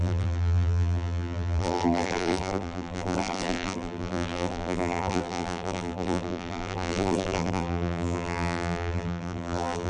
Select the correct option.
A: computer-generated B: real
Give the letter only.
A